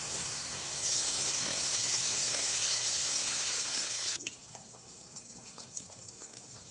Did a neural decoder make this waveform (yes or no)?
yes